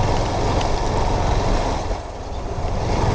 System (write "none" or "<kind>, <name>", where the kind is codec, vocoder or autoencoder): none